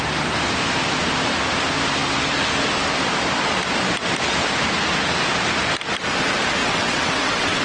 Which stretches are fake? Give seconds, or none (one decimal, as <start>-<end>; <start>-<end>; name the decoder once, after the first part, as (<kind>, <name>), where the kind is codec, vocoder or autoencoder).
6.6-7.6 (vocoder, WaveNeXt)